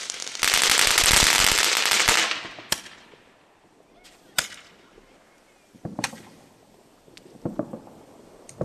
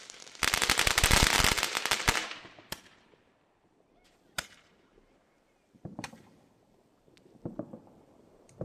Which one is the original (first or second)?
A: first